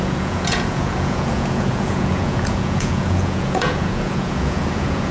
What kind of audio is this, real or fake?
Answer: fake